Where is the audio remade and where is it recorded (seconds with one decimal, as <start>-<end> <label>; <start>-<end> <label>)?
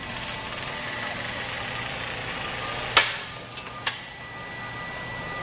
0.0-5.4 recorded